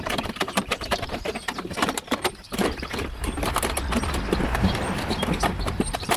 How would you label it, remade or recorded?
remade